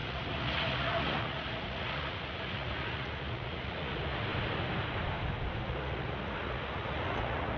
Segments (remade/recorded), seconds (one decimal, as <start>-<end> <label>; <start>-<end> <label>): 0.0-4.3 remade; 4.3-5.6 recorded; 5.6-7.6 remade